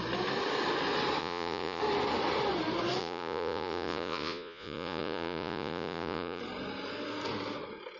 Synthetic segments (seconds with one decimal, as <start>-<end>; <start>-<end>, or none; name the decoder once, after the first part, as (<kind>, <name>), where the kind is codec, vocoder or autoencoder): 1.2-1.8 (vocoder, Vocos); 3.0-6.4